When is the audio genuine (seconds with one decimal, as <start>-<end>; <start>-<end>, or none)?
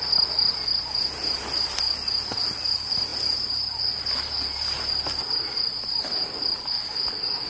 0.0-7.5